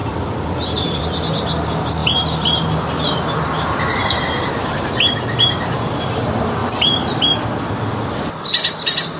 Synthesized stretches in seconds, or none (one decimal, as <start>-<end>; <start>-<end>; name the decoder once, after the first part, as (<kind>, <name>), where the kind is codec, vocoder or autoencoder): 0.0-1.0 (vocoder, BigVGAN v2); 2.0-3.4; 4.0-4.7; 6.6-7.4